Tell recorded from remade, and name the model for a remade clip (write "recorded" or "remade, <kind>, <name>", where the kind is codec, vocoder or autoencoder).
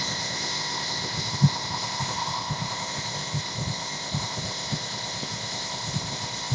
remade, codec, ZipCodec